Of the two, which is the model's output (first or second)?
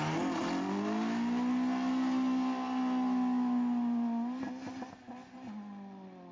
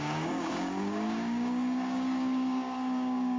second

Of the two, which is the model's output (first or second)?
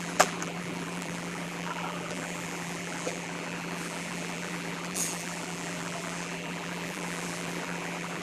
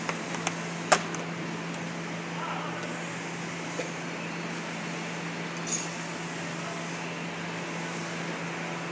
first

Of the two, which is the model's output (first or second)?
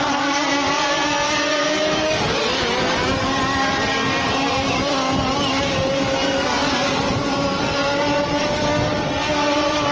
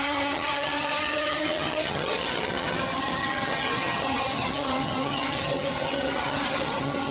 second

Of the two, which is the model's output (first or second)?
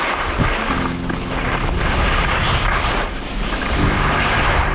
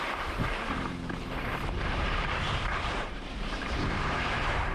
second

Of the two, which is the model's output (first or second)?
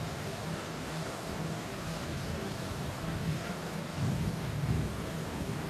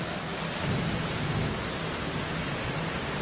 first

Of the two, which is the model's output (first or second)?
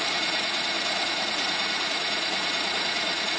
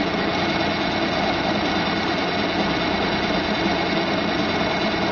first